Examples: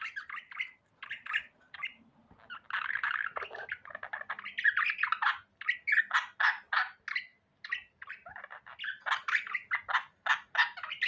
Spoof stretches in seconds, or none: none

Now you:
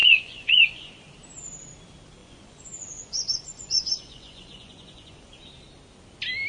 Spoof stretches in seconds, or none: 0.0-0.9 (vocoder, Vocos); 2.2-5.4